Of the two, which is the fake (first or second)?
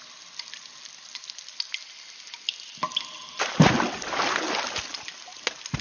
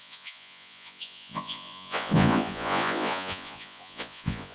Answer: second